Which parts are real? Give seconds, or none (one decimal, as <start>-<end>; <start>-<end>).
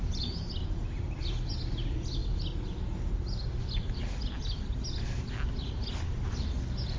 0.0-7.0